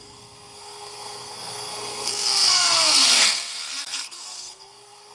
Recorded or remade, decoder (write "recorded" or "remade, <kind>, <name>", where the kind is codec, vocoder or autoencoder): remade, codec, SNAC